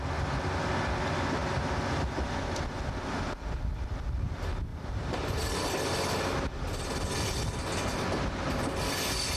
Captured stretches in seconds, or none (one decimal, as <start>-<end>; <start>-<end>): 0.0-4.7; 5.4-9.4